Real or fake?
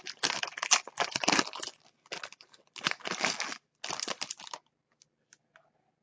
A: real